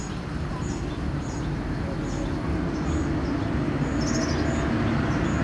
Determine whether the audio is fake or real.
real